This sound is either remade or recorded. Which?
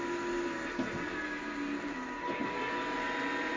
recorded